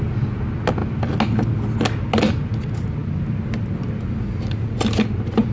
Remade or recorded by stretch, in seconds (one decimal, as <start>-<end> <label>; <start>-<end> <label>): 0.0-5.5 recorded

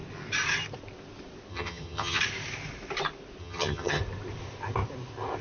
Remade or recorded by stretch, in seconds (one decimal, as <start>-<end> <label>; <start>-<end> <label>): 0.0-1.5 recorded; 1.5-2.2 remade; 2.2-3.4 recorded; 3.4-4.0 remade; 4.0-5.4 recorded

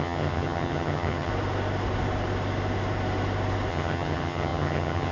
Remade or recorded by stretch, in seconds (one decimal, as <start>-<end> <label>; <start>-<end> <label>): 0.0-1.3 remade; 1.3-3.7 recorded; 3.7-5.1 remade

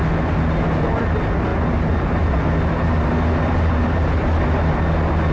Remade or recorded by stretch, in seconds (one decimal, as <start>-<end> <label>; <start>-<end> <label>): 0.0-5.3 recorded

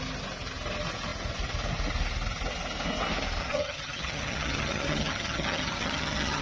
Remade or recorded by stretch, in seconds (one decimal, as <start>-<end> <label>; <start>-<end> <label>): 0.0-3.4 recorded; 3.4-6.4 remade